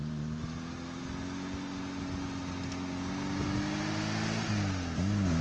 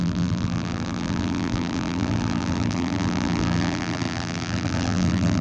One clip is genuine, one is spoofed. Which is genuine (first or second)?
first